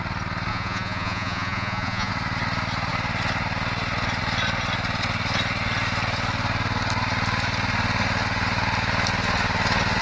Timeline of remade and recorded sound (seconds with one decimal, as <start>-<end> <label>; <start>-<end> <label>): 0.0-0.5 recorded; 0.5-2.1 remade; 2.1-10.0 recorded